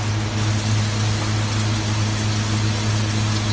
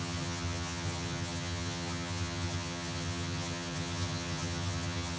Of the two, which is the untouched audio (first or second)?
first